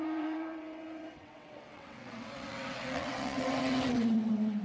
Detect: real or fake fake